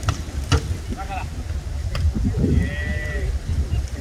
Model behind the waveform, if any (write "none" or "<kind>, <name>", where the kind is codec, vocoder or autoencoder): none